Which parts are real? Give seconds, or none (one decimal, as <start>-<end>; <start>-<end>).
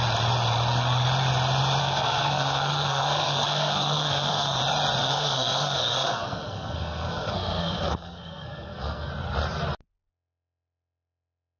0.0-1.8; 4.6-5.0; 9.1-11.6